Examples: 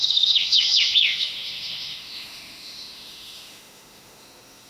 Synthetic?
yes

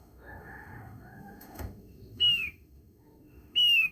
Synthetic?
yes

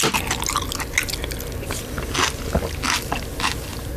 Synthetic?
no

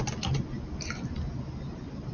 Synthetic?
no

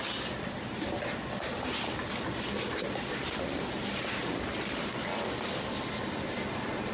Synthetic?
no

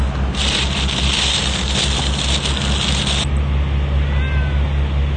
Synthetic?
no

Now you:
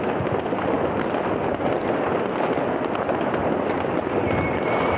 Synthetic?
no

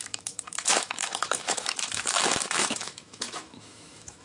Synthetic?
yes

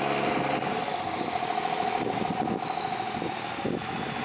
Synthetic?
no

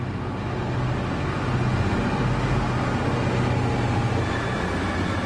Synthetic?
no